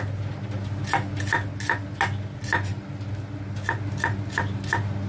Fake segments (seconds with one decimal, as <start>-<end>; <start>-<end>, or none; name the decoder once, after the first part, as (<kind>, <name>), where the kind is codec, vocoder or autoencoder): none